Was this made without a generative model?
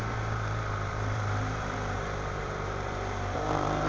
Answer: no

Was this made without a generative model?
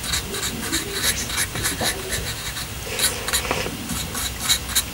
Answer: yes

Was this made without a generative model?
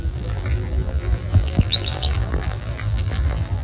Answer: no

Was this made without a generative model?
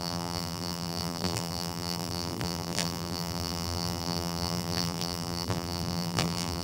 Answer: no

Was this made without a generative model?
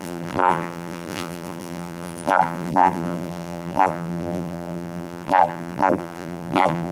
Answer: no